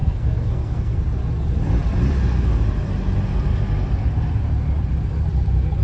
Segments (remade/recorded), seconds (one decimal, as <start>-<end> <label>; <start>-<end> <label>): 0.0-1.0 remade; 1.0-5.8 recorded